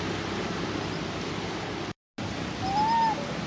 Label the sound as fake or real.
real